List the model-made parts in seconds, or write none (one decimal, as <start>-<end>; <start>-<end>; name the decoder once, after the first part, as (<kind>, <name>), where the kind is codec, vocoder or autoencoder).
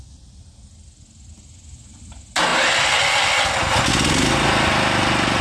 none